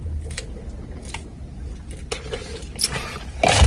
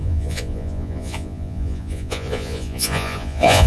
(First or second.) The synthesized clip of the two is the second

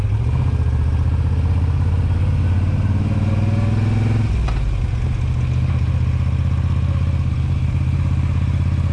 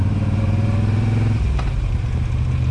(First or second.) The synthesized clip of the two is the second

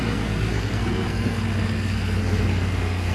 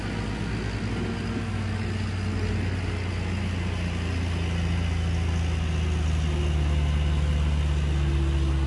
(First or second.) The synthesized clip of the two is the first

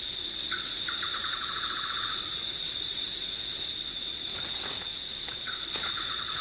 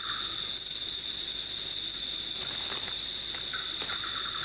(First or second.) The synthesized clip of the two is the first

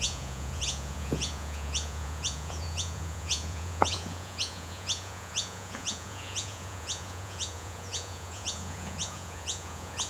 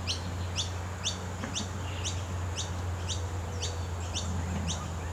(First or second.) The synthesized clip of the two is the first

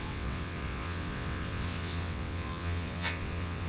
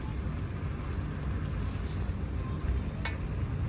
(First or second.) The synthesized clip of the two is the first